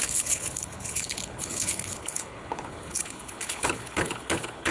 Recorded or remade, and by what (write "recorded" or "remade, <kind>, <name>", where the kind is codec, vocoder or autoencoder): remade, codec, HILCodec